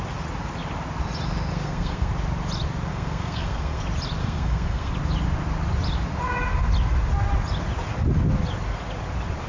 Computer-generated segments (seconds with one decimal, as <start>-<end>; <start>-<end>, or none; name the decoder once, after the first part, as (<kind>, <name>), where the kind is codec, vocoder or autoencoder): 1.5-2.1 (codec, SNAC); 2.9-3.8; 4.2-4.9

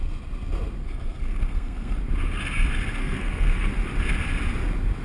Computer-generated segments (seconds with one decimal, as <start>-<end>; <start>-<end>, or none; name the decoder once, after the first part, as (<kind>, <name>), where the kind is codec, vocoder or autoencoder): 0.8-2.0 (codec, SNAC); 3.0-3.7